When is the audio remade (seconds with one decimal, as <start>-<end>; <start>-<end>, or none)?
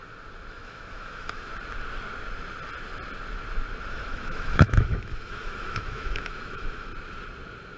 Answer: 0.5-1.5; 3.9-6.9